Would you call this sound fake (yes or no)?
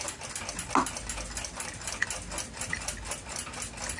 no